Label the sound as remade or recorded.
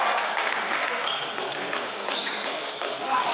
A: remade